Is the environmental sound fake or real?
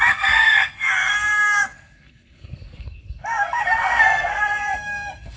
fake